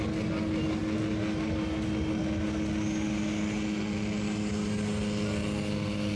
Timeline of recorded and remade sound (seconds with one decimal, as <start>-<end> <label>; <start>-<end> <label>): 0.0-6.2 recorded